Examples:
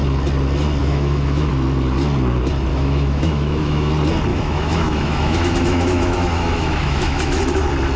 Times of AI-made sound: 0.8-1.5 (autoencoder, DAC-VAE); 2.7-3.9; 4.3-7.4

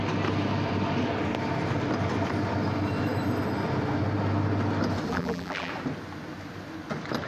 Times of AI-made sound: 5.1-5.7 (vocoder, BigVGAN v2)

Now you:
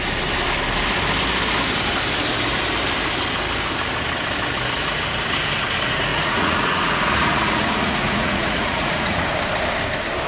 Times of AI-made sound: 6.1-9.3 (vocoder, Vocos)

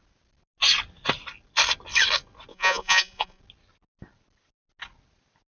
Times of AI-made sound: 2.5-3.4 (vocoder, Vocos)

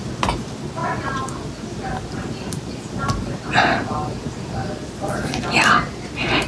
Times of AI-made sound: none